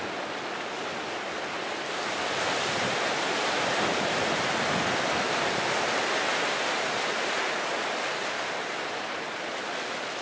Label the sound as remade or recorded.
recorded